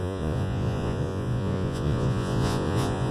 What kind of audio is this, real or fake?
fake